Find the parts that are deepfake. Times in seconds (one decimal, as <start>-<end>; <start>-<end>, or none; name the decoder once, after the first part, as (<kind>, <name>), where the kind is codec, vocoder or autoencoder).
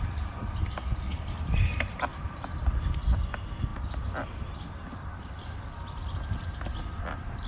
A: 2.1-2.9 (vocoder, BigVGAN v2); 3.7-5.8